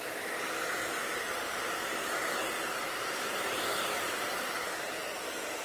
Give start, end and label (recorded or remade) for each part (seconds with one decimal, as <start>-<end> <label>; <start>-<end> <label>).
0.0-5.6 recorded